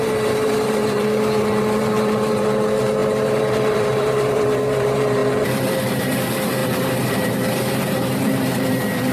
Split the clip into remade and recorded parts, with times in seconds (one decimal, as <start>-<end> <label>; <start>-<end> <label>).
0.0-9.1 remade